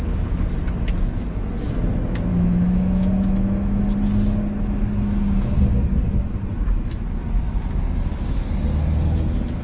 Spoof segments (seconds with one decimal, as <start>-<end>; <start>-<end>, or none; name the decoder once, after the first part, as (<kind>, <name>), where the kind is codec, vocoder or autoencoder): 2.3-3.8 (autoencoder, DAC-VAE)